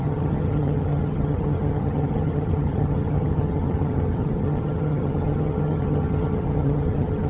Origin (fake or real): fake